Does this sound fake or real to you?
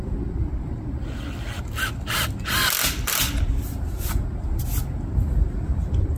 real